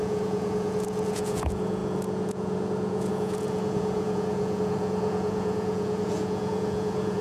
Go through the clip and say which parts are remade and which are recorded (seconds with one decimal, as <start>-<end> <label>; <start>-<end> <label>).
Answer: 0.0-7.2 remade